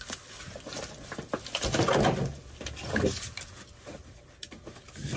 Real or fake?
real